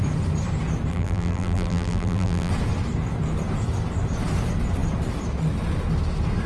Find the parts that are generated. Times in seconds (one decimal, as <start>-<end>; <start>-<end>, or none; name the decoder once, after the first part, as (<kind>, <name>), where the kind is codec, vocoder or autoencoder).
0.9-2.5 (vocoder, BigVGAN v2)